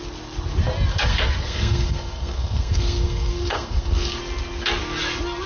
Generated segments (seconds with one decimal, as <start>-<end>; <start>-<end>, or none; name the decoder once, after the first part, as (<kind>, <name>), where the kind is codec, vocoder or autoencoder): 0.9-4.2 (codec, SNAC)